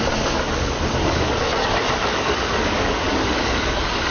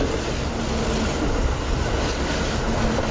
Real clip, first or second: second